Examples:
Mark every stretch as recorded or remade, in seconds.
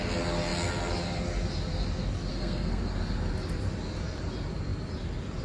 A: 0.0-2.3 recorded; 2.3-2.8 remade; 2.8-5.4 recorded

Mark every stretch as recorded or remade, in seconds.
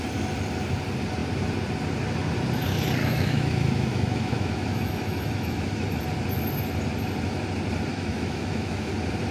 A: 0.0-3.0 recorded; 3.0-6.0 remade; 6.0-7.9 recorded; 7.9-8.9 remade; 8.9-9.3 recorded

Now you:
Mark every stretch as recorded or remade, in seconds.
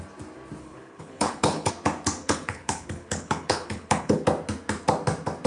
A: 0.0-0.6 recorded; 0.6-1.7 remade; 1.7-2.2 recorded; 2.2-4.2 remade; 4.2-5.5 recorded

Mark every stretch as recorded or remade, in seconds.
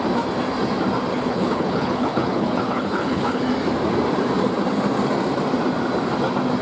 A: 0.0-1.1 recorded; 1.1-3.4 remade; 3.4-6.6 recorded